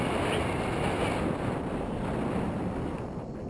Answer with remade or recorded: recorded